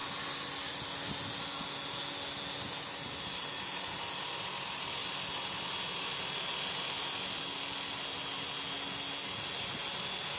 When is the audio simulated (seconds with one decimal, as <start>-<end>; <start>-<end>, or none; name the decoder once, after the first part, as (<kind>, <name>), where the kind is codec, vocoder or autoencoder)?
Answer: none